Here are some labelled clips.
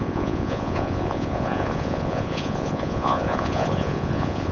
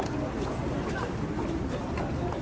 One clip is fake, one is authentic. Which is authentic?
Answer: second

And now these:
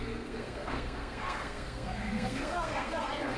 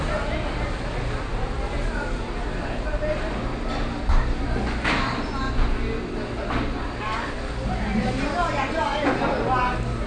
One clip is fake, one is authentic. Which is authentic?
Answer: second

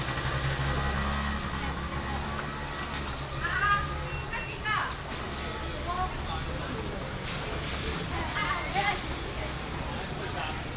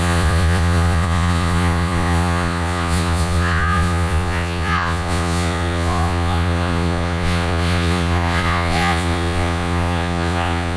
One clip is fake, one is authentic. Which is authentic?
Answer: first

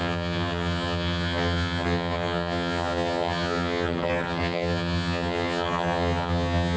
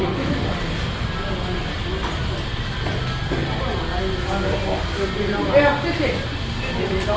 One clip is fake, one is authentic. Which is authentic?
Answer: second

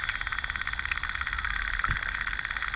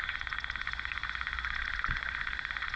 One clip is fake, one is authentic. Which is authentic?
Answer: first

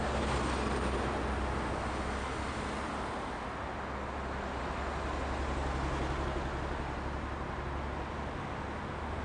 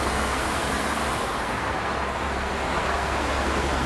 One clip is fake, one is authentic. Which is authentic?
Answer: first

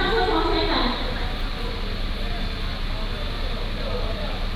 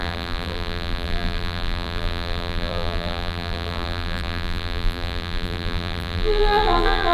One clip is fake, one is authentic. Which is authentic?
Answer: first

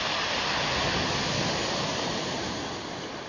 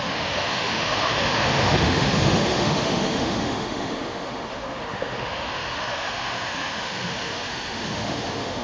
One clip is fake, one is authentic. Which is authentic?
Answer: first